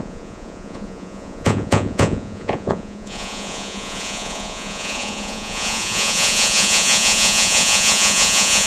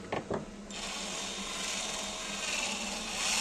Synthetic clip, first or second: first